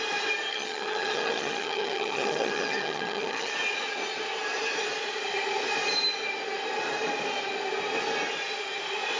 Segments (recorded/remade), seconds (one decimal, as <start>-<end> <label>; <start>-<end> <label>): 0.0-0.5 recorded; 0.5-3.5 remade; 3.5-9.2 recorded